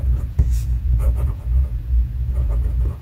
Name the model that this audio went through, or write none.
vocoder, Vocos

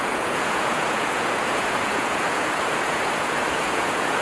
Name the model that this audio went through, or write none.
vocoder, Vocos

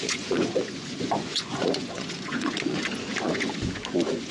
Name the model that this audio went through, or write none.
vocoder, Vocos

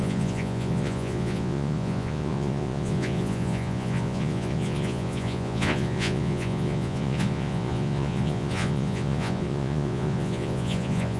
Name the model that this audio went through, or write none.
vocoder, Vocos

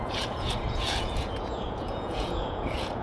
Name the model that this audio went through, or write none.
vocoder, Vocos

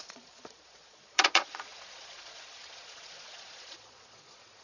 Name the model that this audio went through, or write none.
vocoder, Vocos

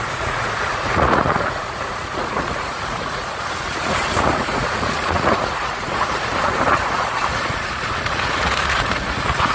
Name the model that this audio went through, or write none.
vocoder, Vocos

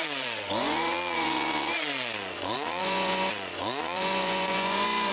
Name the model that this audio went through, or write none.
vocoder, Vocos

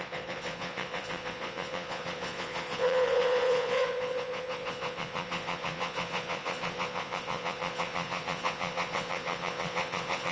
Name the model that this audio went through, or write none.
vocoder, Vocos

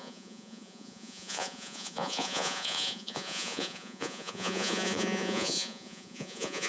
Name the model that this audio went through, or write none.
vocoder, Vocos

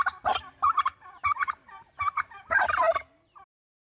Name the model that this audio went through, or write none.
none